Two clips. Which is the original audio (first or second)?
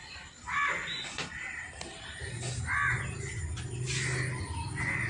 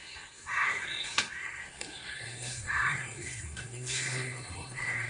first